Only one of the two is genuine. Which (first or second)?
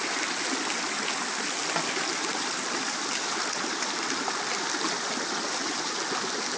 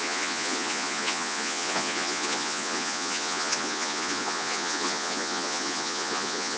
first